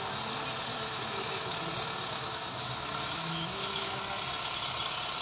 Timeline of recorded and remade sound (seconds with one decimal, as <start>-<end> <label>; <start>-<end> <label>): 0.0-0.7 recorded; 0.7-1.6 remade; 1.6-2.1 recorded; 2.1-4.0 remade; 4.0-5.2 recorded